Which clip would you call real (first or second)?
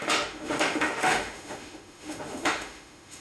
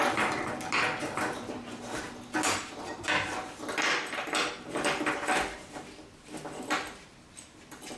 second